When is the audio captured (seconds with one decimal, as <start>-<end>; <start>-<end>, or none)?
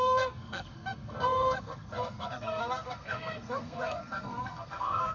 none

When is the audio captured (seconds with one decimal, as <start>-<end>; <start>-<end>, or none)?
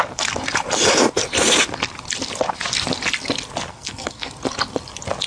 0.0-3.7; 4.3-5.3